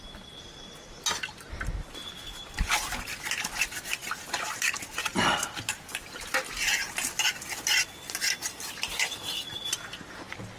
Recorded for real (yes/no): yes